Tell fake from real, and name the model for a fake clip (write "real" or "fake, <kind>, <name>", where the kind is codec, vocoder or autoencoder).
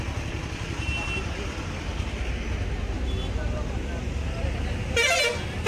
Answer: real